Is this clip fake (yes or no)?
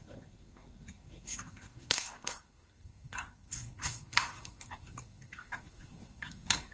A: yes